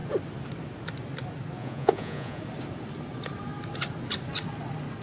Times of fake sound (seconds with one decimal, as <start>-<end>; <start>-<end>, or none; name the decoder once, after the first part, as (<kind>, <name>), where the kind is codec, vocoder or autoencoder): 1.6-2.4 (vocoder, Vocos)